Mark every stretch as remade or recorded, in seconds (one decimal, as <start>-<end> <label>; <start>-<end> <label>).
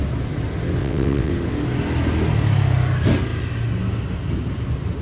0.0-0.8 recorded; 0.8-1.3 remade; 1.3-5.0 recorded